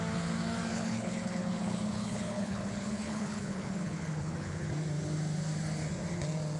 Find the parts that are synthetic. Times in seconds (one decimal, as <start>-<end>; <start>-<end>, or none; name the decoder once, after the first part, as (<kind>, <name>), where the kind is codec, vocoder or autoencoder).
0.7-4.7 (codec, HILCodec)